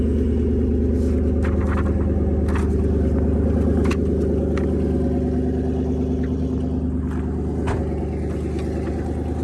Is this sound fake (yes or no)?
no